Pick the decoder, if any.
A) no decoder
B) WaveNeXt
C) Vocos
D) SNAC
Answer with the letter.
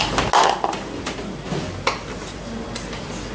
A